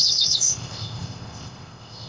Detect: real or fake fake